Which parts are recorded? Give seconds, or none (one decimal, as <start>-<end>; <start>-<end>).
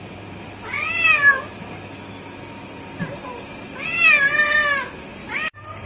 0.0-5.2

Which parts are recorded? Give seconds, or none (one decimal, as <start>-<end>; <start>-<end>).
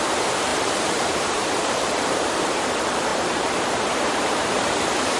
none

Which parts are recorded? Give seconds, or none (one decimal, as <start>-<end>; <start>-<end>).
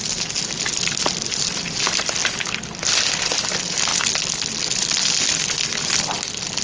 0.0-6.6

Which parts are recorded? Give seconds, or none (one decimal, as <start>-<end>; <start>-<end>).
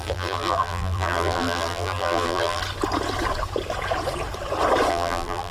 2.6-4.9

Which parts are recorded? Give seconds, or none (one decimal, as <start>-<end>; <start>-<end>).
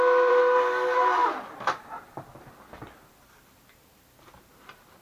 1.2-4.2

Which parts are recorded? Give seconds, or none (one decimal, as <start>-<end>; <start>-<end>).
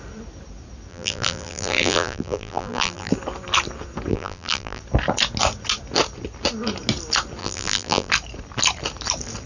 0.0-0.9; 3.1-4.1; 4.8-7.4; 8.1-9.5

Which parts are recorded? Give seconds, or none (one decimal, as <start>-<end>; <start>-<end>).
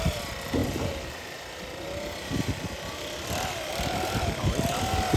none